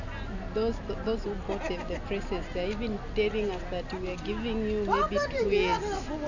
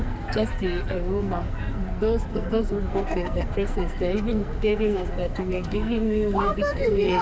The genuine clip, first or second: first